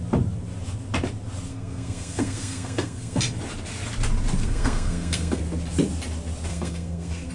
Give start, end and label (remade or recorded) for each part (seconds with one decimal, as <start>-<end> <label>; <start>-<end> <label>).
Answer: 0.0-1.5 recorded; 1.5-3.2 remade; 3.2-4.4 recorded; 4.4-5.4 remade; 5.4-6.5 recorded; 6.5-7.3 remade